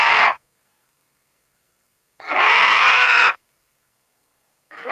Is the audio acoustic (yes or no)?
no